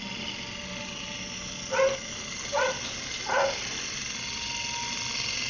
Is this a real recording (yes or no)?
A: yes